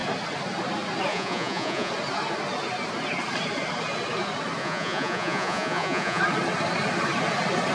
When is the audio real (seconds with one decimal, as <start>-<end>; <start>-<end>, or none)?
0.0-1.1; 1.9-4.6; 6.2-7.7